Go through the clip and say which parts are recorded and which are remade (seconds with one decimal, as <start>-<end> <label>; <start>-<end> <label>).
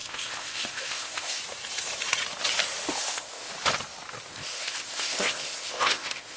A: 0.0-1.4 remade; 1.4-3.0 recorded; 3.0-3.5 remade; 3.5-4.3 recorded; 4.3-6.4 remade